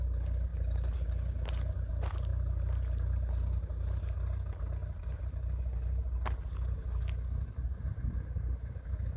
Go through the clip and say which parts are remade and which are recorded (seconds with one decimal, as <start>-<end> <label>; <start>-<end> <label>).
0.0-9.2 recorded